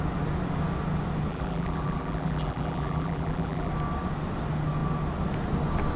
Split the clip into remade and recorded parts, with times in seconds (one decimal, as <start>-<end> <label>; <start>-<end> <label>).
0.0-1.3 recorded; 1.3-3.7 remade; 3.7-6.0 recorded